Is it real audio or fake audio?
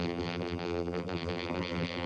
fake